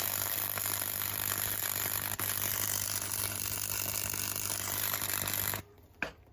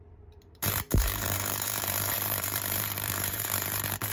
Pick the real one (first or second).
first